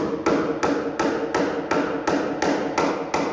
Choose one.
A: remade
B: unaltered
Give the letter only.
B